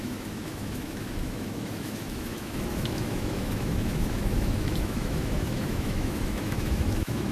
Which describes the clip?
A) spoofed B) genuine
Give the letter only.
A